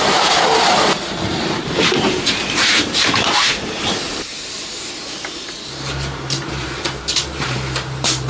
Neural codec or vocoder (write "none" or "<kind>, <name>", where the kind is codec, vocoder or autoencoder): vocoder, BigVGAN v2